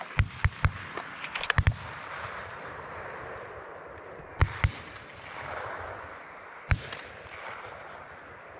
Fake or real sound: real